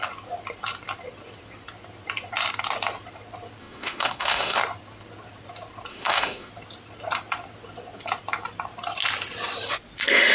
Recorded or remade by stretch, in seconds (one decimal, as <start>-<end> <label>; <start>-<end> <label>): 0.0-3.6 recorded; 3.6-4.6 remade; 4.6-5.9 recorded; 5.9-6.5 remade; 6.5-10.3 recorded

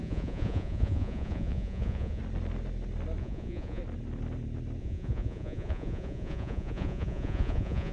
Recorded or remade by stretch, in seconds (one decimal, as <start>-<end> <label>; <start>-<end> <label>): 0.0-2.2 remade; 2.2-3.2 recorded; 3.2-3.8 remade; 3.8-4.8 recorded; 4.8-7.9 remade

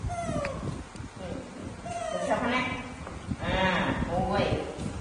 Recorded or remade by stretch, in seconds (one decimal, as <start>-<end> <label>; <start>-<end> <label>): 0.0-1.6 recorded; 1.6-3.7 remade; 3.7-5.0 recorded